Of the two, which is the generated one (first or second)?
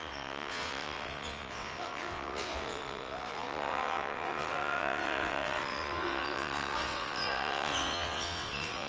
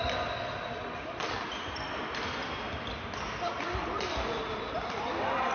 first